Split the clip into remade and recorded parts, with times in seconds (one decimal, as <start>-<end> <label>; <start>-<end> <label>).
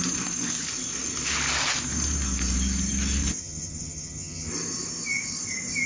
0.0-3.4 recorded; 3.4-4.5 remade; 4.5-5.9 recorded